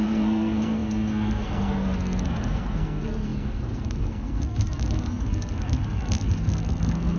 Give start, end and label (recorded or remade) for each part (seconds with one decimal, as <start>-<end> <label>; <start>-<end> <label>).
0.0-7.2 remade